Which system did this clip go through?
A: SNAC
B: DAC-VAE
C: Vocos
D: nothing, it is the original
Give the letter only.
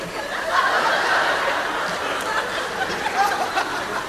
D